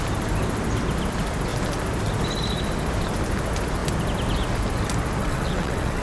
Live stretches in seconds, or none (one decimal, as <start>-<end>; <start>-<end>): 0.0-5.2